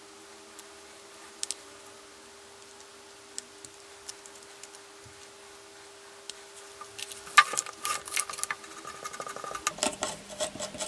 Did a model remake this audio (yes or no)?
no